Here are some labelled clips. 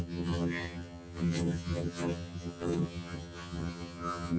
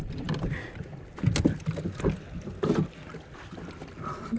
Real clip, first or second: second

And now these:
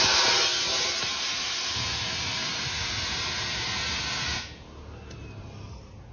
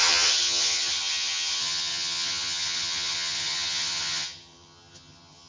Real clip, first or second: first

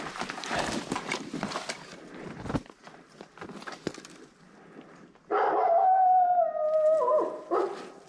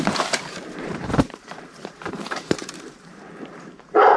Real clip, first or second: first